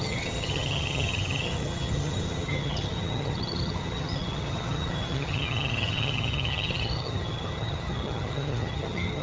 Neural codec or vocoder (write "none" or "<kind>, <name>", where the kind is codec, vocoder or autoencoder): vocoder, HiFi-GAN